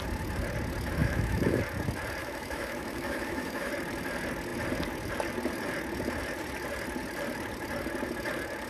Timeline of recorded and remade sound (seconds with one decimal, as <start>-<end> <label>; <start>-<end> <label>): 0.0-1.0 recorded; 1.0-1.6 remade; 1.6-2.2 recorded; 2.2-3.7 remade; 3.7-8.7 recorded